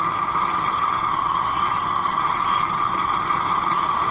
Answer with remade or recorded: remade